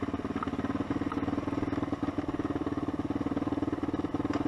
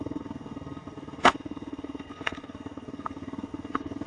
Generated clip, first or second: second